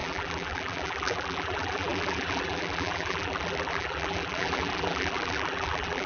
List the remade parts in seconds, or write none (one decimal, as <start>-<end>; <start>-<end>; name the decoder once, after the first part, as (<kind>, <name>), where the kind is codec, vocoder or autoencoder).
0.0-6.1 (vocoder, BigVGAN v2)